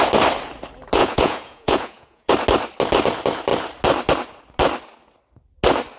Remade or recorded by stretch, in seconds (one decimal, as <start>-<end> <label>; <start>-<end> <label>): 0.0-1.0 recorded; 1.0-2.3 remade; 2.3-6.0 recorded